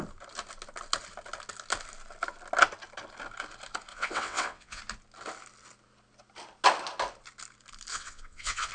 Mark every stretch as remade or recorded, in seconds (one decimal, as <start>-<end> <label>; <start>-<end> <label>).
0.0-3.9 recorded; 3.9-4.8 remade; 4.8-7.9 recorded; 7.9-8.7 remade